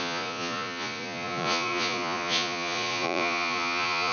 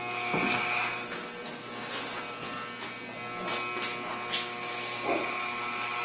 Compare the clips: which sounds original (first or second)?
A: second